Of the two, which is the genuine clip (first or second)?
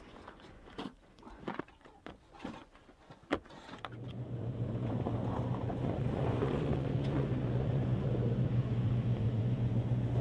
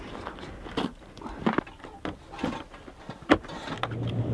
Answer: second